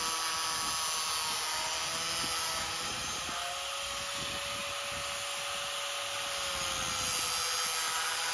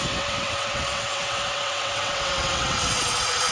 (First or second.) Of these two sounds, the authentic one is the first